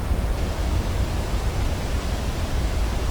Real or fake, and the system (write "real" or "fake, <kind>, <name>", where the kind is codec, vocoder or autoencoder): fake, vocoder, BigVGAN v2